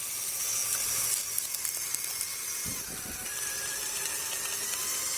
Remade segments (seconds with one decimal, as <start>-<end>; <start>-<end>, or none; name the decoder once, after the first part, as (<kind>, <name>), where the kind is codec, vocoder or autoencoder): none